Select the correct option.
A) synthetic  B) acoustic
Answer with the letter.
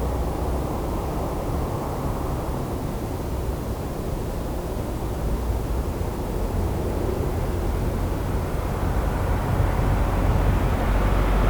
B